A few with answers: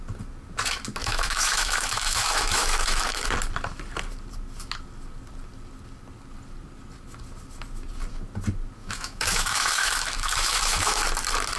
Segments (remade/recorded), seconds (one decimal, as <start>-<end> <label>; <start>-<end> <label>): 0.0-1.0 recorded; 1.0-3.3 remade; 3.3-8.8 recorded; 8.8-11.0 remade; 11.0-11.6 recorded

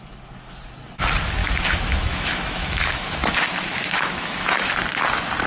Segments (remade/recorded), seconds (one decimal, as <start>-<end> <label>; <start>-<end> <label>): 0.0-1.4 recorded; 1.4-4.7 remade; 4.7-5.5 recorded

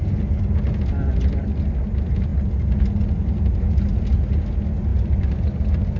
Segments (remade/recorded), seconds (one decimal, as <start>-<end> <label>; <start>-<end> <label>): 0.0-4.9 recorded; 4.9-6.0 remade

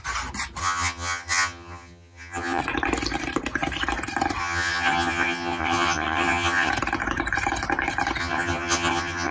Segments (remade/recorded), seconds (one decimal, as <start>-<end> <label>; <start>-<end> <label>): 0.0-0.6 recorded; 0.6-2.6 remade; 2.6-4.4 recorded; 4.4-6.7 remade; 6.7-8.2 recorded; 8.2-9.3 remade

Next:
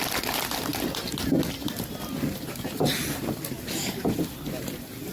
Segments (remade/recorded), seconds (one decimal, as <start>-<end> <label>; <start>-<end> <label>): 0.0-5.1 recorded

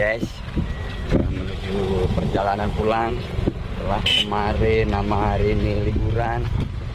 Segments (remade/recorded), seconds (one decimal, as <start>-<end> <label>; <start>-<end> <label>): 0.0-1.2 recorded; 1.2-3.1 remade; 3.1-4.1 recorded; 4.1-5.9 remade; 5.9-6.9 recorded

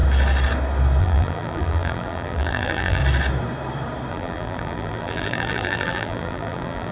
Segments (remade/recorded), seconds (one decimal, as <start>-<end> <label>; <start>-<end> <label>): 0.0-1.0 recorded; 1.0-3.0 remade; 3.0-4.1 recorded; 4.1-6.9 remade